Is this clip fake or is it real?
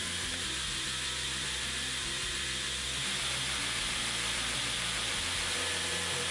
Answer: real